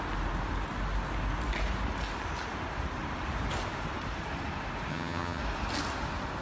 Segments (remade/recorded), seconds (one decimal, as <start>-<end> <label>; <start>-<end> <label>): 0.0-4.9 recorded; 4.9-5.4 remade; 5.4-6.4 recorded